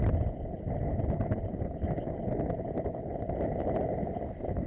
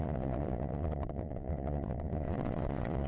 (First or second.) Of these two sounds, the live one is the first